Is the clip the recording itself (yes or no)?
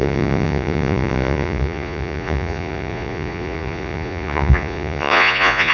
no